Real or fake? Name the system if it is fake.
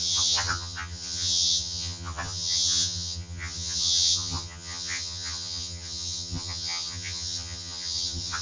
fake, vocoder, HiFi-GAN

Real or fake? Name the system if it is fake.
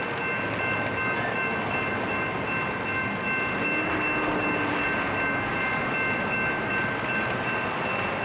real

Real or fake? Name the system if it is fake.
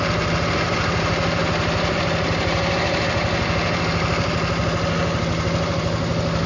real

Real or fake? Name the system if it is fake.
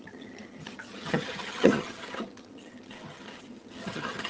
fake, vocoder, HiFi-GAN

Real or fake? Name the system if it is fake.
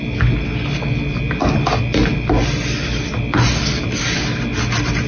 real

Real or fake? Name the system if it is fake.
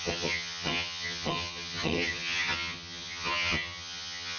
fake, vocoder, HiFi-GAN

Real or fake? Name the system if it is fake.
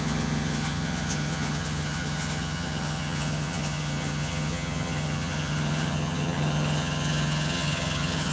fake, vocoder, HiFi-GAN